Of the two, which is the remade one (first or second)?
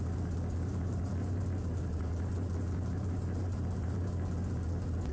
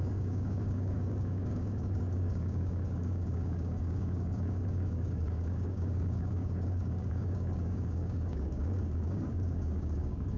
second